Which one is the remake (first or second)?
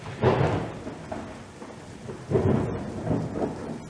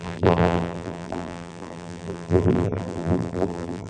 second